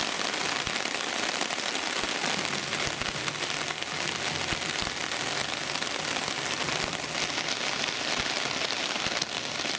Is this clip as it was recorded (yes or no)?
yes